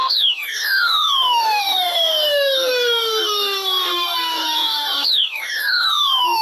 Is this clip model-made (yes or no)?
yes